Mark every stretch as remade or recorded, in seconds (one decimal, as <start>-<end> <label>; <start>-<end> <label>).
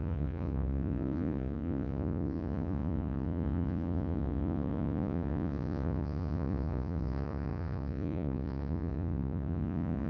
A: 0.0-10.1 remade